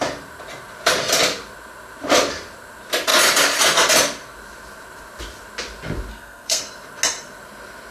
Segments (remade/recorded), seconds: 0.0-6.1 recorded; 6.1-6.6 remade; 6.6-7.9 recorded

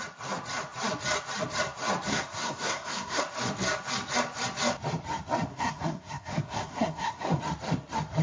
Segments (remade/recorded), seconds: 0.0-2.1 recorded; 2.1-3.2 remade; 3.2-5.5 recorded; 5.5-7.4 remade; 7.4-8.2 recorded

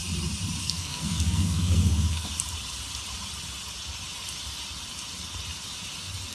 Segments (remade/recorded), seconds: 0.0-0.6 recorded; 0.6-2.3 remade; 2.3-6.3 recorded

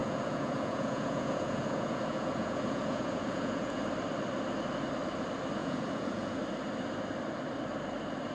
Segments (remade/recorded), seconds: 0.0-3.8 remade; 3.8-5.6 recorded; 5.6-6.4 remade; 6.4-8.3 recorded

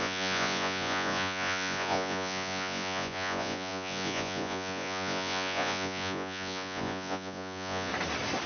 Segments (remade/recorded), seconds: 0.0-7.9 remade; 7.9-8.5 recorded

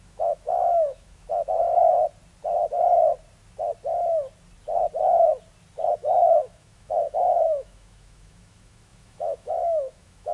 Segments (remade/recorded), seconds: 0.0-1.3 remade; 1.3-5.9 recorded; 5.9-10.3 remade